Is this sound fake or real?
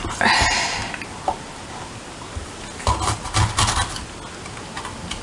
real